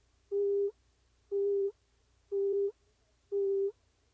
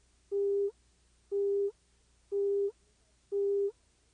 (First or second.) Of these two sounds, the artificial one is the first